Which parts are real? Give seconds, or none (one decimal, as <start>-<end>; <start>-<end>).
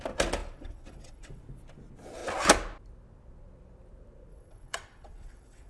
0.0-0.4; 1.4-4.3